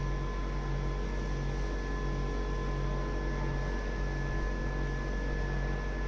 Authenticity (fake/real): real